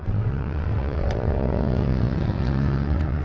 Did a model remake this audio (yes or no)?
yes